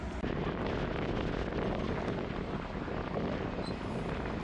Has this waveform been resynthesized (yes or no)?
no